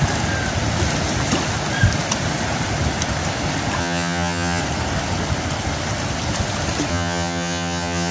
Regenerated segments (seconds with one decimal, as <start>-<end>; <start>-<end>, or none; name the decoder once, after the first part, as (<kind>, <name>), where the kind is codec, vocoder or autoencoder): 3.8-4.6 (vocoder, HiFi-GAN); 6.9-8.1